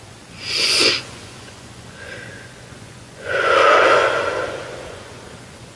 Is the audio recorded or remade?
remade